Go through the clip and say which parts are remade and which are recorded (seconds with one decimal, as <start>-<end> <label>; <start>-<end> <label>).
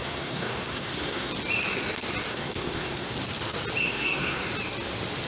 0.0-1.3 remade; 1.3-2.3 recorded; 2.3-3.1 remade; 3.1-3.8 recorded; 3.8-4.4 remade; 4.4-5.3 recorded